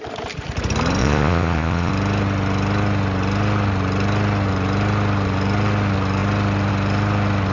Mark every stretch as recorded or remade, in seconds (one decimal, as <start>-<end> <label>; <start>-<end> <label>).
0.0-1.0 recorded; 1.0-1.9 remade; 1.9-7.5 recorded